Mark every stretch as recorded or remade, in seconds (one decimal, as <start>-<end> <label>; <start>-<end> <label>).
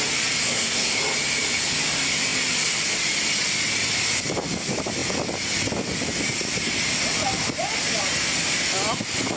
0.0-0.4 recorded; 0.4-1.0 remade; 1.0-9.4 recorded